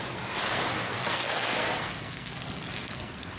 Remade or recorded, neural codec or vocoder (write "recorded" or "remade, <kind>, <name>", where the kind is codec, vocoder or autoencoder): remade, codec, SNAC